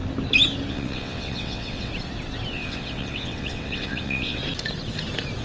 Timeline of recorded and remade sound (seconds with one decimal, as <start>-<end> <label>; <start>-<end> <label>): 0.0-0.7 recorded; 0.7-1.9 remade; 1.9-2.5 recorded; 2.5-4.4 remade; 4.4-5.4 recorded